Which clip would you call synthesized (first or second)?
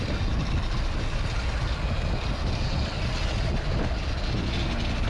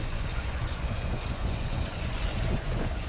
second